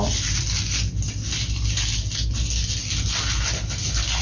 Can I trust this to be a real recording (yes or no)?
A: yes